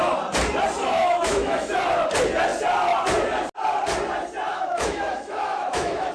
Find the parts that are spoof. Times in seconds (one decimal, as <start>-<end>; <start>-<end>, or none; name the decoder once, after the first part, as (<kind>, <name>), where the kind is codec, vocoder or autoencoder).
0.8-1.8 (autoencoder, DAC-VAE); 4.5-6.1